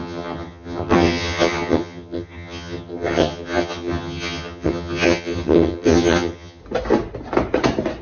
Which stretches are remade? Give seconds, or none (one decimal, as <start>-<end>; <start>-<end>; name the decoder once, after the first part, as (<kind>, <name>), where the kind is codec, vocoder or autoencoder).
0.0-6.6 (vocoder, HiFi-GAN)